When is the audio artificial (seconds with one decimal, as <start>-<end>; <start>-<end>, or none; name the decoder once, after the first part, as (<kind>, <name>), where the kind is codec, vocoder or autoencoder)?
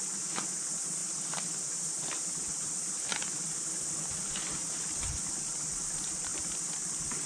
1.0-5.4 (vocoder, BigVGAN v2)